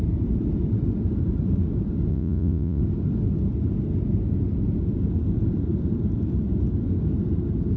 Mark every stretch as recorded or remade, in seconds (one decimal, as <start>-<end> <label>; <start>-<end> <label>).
0.0-2.1 recorded; 2.1-2.8 remade; 2.8-7.8 recorded